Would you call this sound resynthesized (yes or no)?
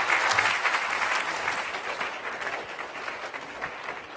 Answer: no